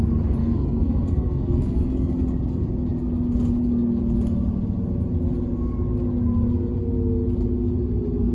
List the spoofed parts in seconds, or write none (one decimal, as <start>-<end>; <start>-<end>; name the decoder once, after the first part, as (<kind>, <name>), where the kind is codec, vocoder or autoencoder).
0.4-2.1 (codec, SNAC)